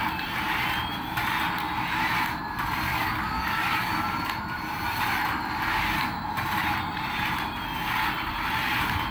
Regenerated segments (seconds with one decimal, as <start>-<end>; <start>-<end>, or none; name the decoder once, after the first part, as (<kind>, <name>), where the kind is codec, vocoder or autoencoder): 2.9-3.9 (codec, DAC)